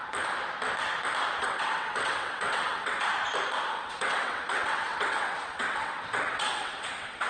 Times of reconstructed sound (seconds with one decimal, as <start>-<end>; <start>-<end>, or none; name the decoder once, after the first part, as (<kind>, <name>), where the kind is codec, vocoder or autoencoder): 1.4-3.1 (vocoder, WaveNeXt); 3.7-7.3